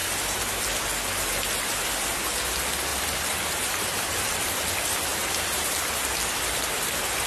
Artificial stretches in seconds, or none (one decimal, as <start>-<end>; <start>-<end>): 0.0-0.6; 2.9-4.6; 5.1-5.9